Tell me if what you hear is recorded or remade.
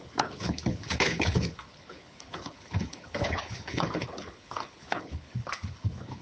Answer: remade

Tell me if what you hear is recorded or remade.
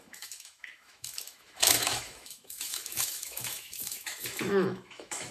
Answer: remade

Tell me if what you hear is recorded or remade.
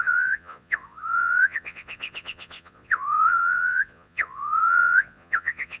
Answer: remade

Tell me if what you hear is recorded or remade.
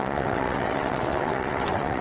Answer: remade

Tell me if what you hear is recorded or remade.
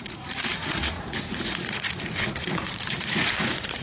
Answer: remade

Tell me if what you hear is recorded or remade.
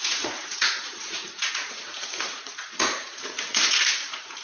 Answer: remade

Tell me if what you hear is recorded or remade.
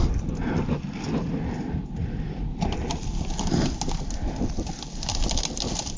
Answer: recorded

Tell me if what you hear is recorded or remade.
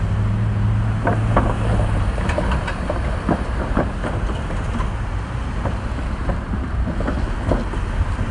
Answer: recorded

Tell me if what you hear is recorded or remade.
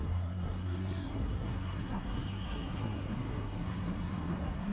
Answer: remade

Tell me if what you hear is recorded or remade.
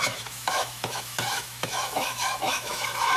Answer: remade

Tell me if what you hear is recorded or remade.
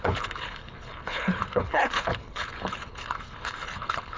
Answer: remade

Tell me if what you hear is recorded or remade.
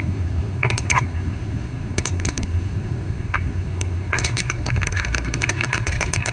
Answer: remade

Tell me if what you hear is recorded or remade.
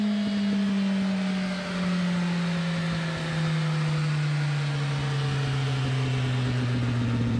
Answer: recorded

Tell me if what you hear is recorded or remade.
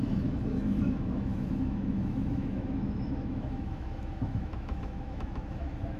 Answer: remade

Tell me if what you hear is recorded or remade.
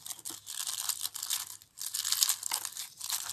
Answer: recorded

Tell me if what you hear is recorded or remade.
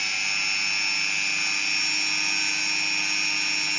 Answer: recorded